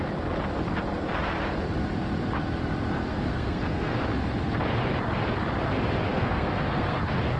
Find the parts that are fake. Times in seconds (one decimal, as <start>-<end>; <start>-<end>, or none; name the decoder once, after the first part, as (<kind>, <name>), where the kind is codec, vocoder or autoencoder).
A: 3.1-4.0 (codec, SNAC); 6.1-7.0